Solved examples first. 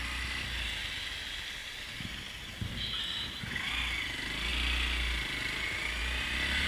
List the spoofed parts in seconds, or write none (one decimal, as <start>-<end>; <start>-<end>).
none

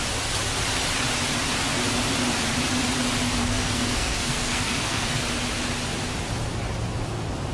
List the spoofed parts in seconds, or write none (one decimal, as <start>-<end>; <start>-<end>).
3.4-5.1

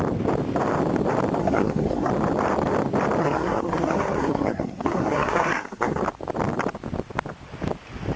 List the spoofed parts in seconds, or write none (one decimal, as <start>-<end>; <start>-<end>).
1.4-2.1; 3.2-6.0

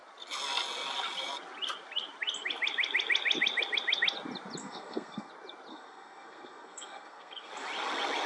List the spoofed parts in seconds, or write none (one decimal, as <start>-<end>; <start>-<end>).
4.6-5.3; 5.7-7.5